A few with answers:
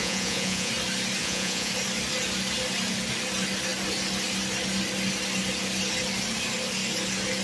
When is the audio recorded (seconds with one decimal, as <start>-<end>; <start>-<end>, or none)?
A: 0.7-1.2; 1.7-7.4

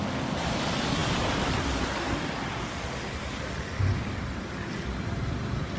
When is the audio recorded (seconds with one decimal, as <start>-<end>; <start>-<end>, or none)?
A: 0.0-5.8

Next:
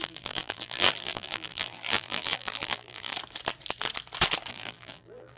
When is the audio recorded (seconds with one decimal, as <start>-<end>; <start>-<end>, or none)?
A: 3.1-4.5

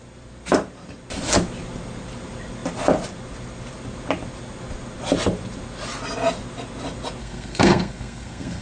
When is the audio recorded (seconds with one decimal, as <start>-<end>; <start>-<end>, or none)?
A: 0.0-7.2

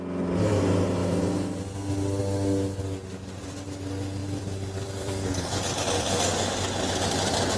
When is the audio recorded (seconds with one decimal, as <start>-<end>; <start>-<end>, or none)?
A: 0.0-4.2; 5.8-7.6